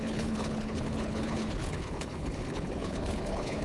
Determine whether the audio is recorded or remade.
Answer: remade